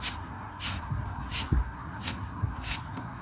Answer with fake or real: fake